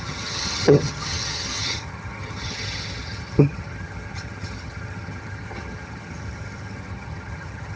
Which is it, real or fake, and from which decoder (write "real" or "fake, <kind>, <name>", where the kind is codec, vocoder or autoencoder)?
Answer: fake, vocoder, HiFi-GAN